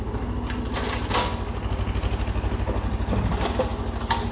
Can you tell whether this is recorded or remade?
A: recorded